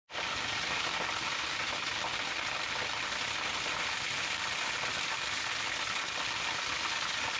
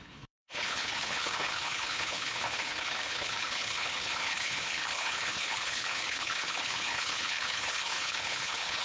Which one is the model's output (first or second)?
second